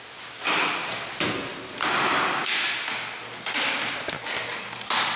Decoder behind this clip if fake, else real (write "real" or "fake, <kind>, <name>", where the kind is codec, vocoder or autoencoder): real